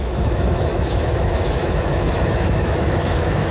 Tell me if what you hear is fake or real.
fake